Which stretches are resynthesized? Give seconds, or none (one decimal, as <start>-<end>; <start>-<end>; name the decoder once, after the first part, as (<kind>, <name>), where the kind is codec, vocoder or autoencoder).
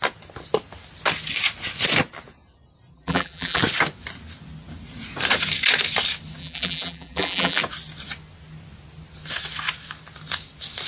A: 2.9-3.6 (vocoder, BigVGAN v2); 6.4-7.6